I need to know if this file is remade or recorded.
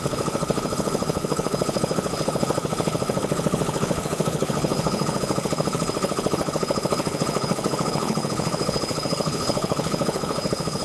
remade